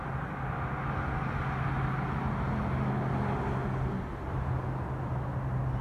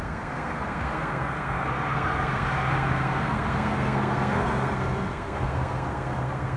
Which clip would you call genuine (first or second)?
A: first